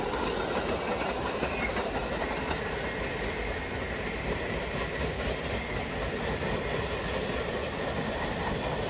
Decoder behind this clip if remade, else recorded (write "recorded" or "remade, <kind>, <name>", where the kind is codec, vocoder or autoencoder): recorded